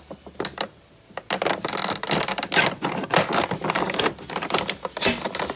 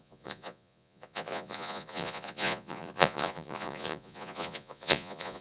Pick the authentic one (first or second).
first